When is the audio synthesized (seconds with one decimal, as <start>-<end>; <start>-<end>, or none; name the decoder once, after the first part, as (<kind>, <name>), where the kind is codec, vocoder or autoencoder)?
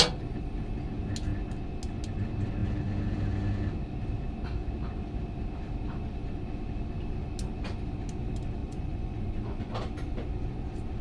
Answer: 8.6-9.7 (vocoder, Vocos)